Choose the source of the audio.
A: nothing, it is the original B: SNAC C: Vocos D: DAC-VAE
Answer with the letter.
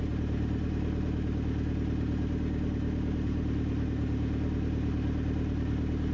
A